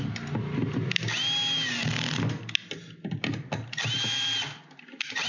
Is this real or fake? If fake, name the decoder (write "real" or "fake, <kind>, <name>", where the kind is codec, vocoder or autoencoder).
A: real